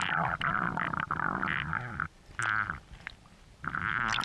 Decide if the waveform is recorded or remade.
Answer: recorded